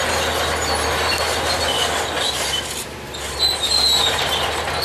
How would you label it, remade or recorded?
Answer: recorded